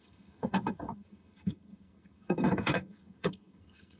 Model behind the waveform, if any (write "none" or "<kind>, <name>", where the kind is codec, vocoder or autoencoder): codec, SNAC